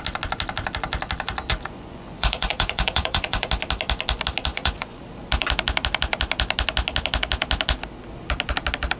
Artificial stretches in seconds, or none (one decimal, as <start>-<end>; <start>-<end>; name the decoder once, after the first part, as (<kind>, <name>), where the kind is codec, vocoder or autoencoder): 1.5-3.5 (vocoder, Vocos); 4.5-5.0